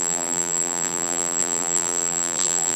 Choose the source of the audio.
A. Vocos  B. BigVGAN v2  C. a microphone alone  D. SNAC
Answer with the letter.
B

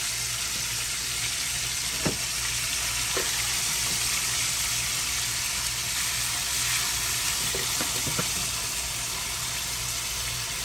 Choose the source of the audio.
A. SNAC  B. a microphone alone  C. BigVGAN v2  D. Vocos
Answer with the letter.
B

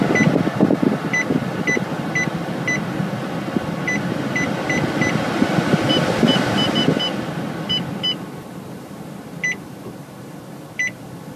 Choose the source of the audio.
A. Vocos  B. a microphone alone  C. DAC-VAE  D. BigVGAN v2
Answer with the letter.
B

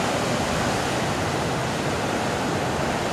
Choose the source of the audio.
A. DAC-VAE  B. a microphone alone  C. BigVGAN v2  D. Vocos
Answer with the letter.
B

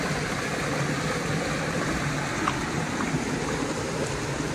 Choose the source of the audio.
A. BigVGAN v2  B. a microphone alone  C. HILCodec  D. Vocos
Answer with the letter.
B